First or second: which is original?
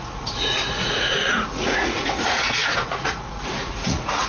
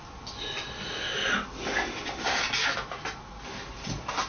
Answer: second